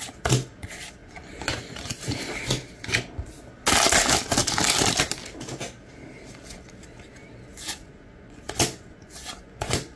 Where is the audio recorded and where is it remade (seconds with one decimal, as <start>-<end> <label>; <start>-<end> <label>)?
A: 0.0-1.0 recorded; 1.0-2.0 remade; 2.0-7.5 recorded; 7.5-10.0 remade